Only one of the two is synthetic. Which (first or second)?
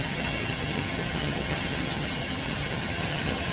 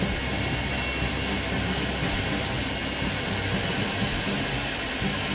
first